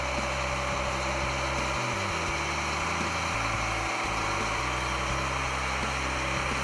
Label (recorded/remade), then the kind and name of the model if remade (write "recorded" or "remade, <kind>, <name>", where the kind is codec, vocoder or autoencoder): recorded